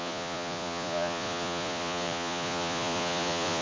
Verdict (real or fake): fake